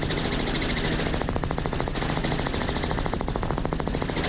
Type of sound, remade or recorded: recorded